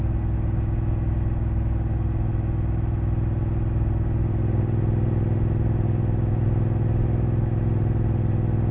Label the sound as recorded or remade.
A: recorded